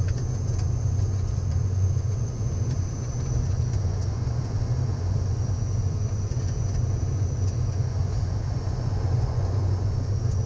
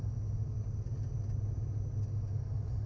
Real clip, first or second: second